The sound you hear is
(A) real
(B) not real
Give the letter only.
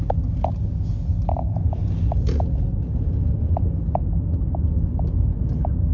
A